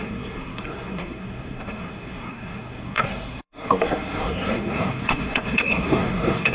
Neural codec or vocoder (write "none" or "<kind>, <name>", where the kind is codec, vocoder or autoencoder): codec, SNAC